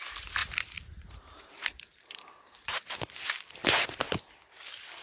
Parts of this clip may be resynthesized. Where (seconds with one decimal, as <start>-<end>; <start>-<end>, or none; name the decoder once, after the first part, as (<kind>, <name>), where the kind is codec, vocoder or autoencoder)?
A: 0.4-2.9 (vocoder, BigVGAN v2)